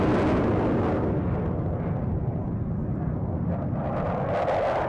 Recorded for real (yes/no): yes